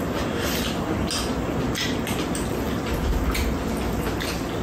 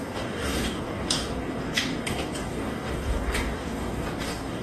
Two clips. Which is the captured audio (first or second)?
first